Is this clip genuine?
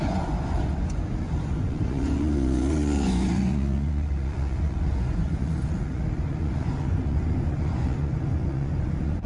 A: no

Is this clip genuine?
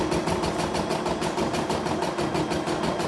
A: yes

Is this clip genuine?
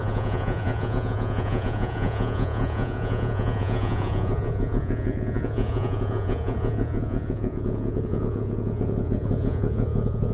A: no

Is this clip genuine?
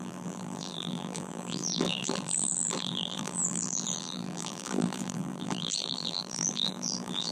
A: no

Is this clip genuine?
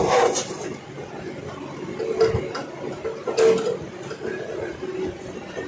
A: yes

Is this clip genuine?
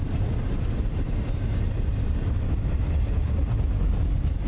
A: yes